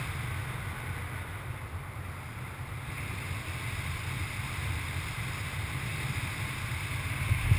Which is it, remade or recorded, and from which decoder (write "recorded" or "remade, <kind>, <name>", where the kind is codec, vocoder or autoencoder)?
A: recorded